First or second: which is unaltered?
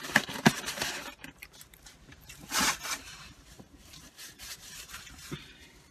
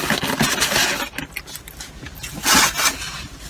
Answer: second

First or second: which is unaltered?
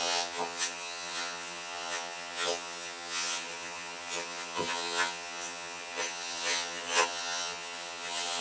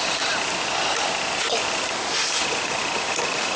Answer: second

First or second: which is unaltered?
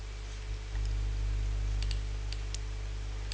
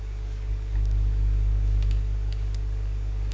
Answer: first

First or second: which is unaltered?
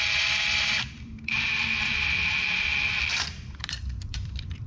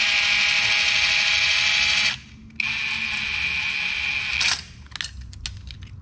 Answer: second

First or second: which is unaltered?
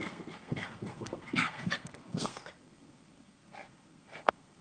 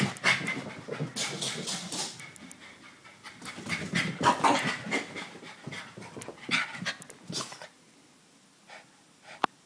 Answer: second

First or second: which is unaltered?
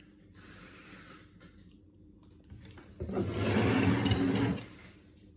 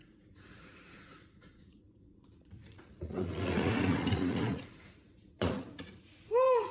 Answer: first